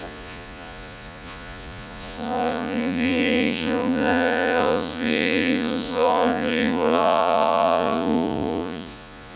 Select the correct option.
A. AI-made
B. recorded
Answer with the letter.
A